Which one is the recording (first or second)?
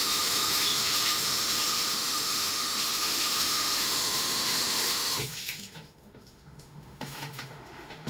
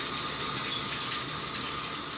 second